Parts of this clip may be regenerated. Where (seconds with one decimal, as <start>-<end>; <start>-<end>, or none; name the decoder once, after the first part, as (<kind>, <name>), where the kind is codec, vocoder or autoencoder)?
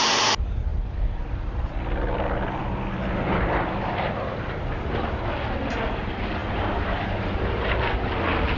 0.7-1.7 (vocoder, BigVGAN v2); 6.4-7.7